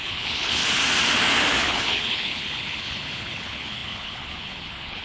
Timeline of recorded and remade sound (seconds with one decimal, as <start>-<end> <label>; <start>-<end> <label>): 0.0-0.6 remade; 0.6-1.6 recorded; 1.6-5.0 remade